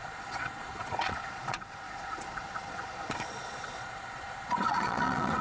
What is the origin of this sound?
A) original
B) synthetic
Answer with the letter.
B